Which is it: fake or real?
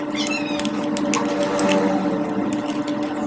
real